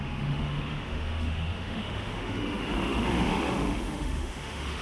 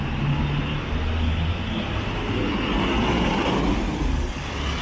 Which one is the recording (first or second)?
second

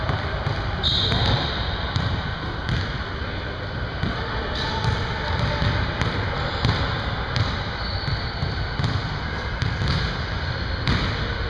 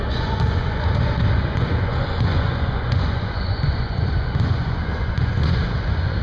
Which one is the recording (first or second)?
first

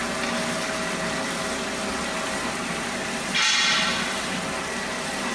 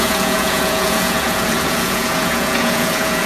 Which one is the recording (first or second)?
first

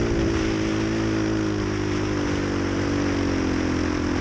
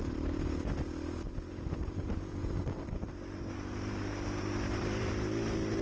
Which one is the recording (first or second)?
first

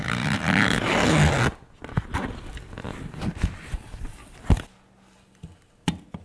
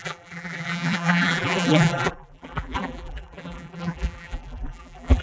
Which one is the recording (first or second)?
first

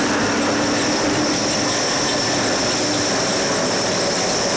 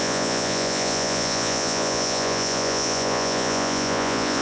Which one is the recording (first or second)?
first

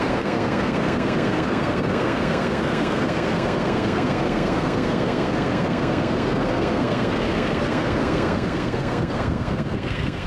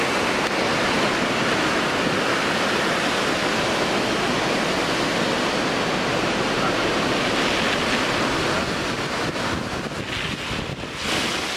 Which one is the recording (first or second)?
second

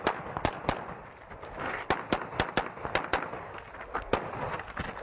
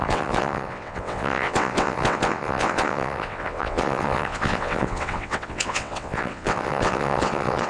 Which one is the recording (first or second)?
first